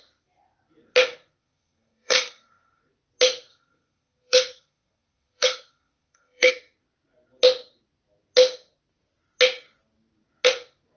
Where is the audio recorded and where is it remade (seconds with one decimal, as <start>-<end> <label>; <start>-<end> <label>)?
0.0-1.4 recorded; 1.4-2.8 remade; 2.8-3.5 recorded; 3.5-6.5 remade; 6.5-11.0 recorded